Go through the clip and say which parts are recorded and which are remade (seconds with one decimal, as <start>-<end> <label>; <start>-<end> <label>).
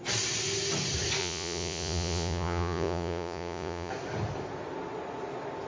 0.0-1.2 recorded; 1.2-3.9 remade; 3.9-5.7 recorded